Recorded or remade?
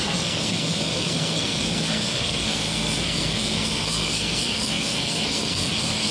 remade